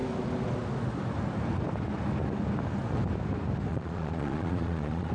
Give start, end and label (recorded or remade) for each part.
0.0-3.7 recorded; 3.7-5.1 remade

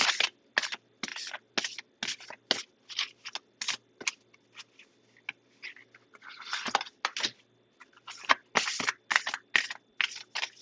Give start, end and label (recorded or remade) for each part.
0.0-10.6 recorded